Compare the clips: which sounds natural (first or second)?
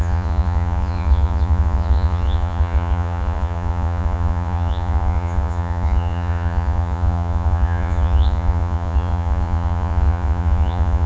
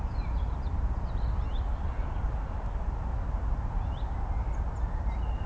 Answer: second